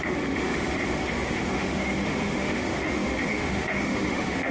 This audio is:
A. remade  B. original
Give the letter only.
A